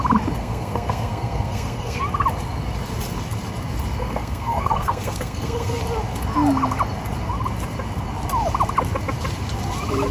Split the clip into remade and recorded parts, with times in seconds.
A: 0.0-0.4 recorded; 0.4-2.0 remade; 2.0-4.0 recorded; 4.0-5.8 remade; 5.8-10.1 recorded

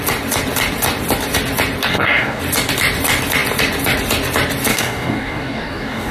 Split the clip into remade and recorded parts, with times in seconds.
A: 0.0-1.9 recorded; 1.9-2.4 remade; 2.4-4.7 recorded; 4.7-6.1 remade

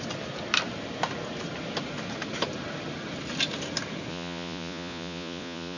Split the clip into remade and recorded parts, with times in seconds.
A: 0.0-4.1 recorded; 4.1-5.8 remade

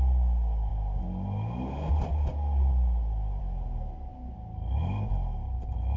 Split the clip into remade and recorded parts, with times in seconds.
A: 0.0-6.0 recorded

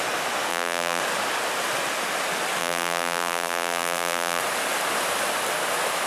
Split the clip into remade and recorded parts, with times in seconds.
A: 0.0-0.5 recorded; 0.5-1.0 remade; 1.0-2.6 recorded; 2.6-4.4 remade; 4.4-6.1 recorded